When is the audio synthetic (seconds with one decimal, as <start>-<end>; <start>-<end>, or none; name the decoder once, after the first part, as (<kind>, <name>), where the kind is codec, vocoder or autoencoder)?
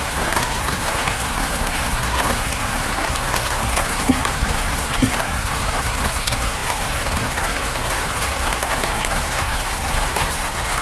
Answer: 0.0-10.8 (codec, SNAC)